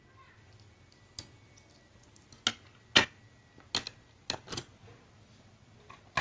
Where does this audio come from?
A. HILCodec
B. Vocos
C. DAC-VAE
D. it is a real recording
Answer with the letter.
D